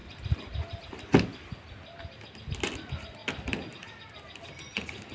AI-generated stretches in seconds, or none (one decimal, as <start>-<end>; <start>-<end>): none